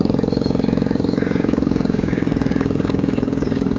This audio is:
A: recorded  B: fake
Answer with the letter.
B